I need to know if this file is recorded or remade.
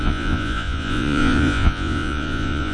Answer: remade